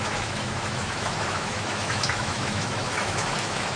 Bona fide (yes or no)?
no